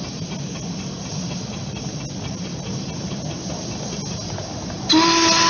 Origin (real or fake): real